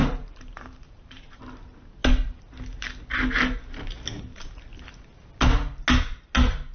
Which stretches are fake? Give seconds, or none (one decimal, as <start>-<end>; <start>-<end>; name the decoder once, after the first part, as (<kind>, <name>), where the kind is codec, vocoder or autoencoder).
0.0-1.4 (vocoder, BigVGAN v2)